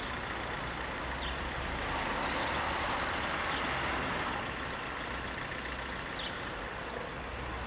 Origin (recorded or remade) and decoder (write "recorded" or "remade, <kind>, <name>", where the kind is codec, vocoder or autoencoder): recorded